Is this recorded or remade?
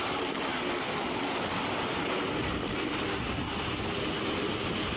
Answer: recorded